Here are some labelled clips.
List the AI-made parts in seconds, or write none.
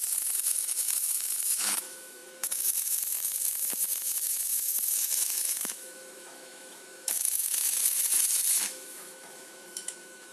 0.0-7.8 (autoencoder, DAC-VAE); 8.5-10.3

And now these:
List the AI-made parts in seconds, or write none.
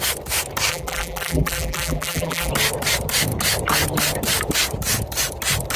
0.7-2.5 (vocoder, BigVGAN v2)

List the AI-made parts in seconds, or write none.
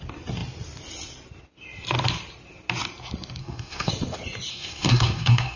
3.4-3.9 (codec, SNAC); 4.5-5.6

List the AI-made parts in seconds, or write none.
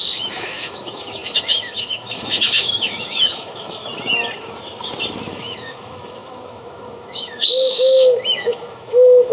0.0-3.9 (autoencoder, DAC-VAE); 5.3-9.3